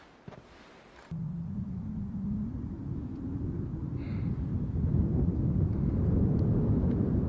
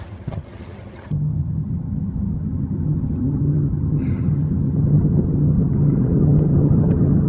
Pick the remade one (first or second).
second